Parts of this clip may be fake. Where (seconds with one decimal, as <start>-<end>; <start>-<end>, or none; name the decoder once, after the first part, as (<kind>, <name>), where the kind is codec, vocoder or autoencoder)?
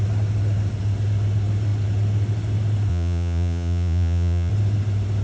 2.9-4.5 (vocoder, Vocos)